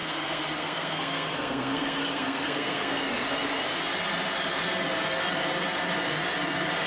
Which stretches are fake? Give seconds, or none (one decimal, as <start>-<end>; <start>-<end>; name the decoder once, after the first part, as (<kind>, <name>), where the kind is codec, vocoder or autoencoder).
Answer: 0.0-3.0 (codec, SNAC)

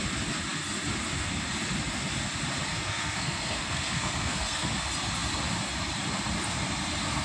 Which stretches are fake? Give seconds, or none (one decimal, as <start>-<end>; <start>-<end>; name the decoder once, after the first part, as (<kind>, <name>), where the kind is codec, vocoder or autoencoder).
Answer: 2.7-4.7 (codec, SNAC)